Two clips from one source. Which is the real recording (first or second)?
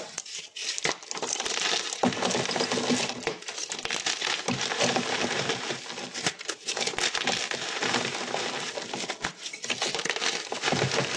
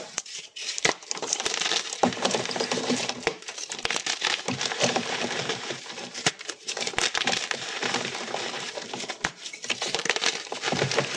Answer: first